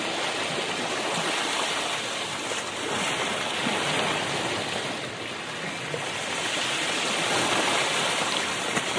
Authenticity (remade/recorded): recorded